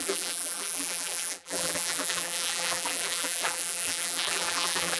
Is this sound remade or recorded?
remade